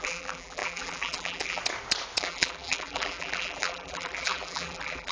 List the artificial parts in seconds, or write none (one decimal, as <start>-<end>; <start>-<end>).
0.0-1.6; 2.2-5.1